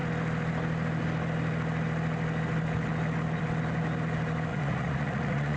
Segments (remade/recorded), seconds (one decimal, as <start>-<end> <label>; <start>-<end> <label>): 0.0-4.5 recorded; 4.5-5.6 remade